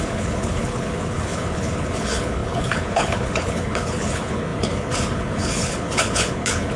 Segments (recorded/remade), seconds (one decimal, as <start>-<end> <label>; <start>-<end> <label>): 0.0-6.8 remade